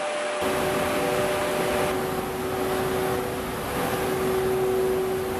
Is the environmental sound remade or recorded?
recorded